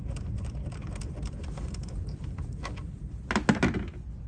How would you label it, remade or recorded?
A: recorded